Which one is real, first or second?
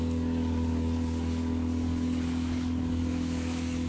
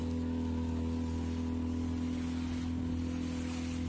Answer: second